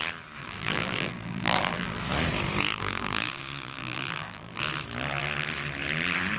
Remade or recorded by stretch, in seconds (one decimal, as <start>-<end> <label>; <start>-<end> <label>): 0.0-0.4 recorded; 0.4-2.0 remade; 2.0-2.7 recorded; 2.7-3.4 remade; 3.4-3.8 recorded; 3.8-4.6 remade; 4.6-6.4 recorded